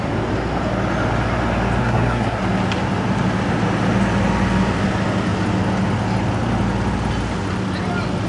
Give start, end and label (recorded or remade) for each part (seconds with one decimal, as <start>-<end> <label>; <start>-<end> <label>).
0.0-1.8 recorded; 1.8-2.4 remade; 2.4-8.3 recorded